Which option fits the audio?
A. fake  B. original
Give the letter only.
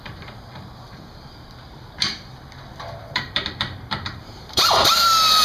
A